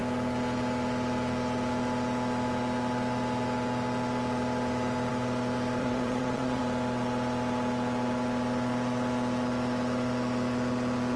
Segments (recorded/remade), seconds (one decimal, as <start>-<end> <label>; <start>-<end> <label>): 0.0-5.8 recorded; 5.8-6.6 remade; 6.6-11.2 recorded